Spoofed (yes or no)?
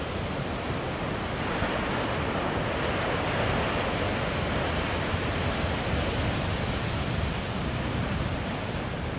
no